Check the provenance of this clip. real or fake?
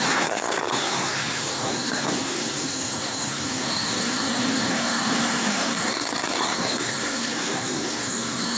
fake